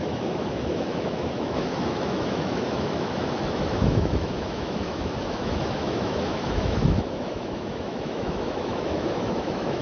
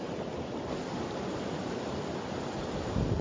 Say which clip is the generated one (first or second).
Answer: first